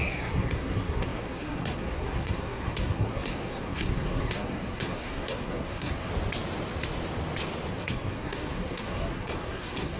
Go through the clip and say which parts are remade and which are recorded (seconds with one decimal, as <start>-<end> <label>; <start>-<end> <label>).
0.0-6.1 remade; 6.1-7.7 recorded; 7.7-10.0 remade

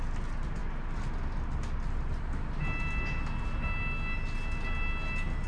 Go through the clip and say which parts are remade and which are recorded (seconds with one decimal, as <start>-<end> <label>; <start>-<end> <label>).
0.0-5.5 recorded